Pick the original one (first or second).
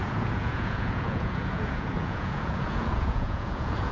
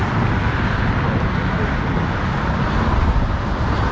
second